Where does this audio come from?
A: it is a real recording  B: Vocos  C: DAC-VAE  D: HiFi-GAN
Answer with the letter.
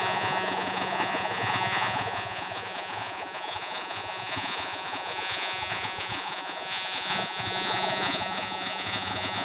B